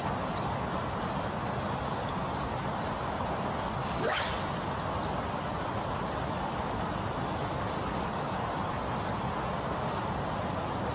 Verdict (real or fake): real